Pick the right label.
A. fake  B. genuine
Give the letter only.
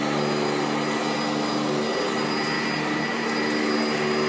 B